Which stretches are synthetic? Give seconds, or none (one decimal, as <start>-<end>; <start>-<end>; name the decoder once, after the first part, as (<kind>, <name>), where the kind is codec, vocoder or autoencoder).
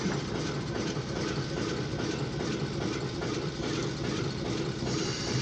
none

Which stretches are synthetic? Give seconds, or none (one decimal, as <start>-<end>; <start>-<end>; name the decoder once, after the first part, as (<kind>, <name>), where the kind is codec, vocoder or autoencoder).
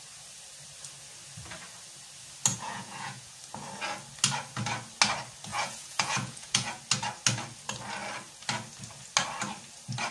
2.5-3.4 (vocoder, Vocos); 5.5-6.8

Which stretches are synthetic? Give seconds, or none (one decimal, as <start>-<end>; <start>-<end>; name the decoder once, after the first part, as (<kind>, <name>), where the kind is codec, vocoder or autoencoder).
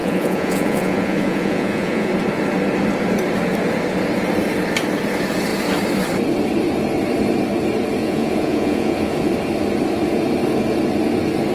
0.0-2.1 (vocoder, Vocos); 8.0-9.3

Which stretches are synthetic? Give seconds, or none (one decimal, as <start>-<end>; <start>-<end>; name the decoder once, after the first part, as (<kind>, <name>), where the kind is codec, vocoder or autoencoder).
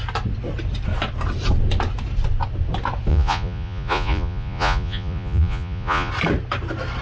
3.1-6.1 (vocoder, Vocos)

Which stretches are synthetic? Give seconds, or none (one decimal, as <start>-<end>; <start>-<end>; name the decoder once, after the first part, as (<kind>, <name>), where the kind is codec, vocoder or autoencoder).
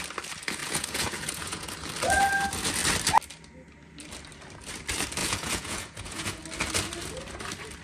0.6-1.7 (vocoder, Vocos); 5.2-6.4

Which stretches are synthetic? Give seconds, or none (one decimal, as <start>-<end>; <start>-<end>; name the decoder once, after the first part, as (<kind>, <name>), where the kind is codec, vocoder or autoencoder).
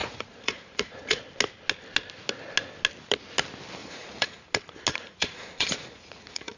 0.0-1.2 (vocoder, Vocos); 3.8-4.5; 4.9-6.6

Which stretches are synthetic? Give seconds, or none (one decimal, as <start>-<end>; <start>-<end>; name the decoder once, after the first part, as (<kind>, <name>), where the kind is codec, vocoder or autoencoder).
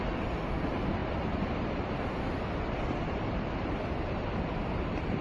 none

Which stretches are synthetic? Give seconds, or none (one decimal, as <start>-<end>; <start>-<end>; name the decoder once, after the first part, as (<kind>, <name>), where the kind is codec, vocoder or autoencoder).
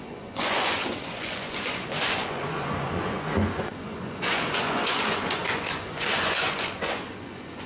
0.0-7.7 (vocoder, Vocos)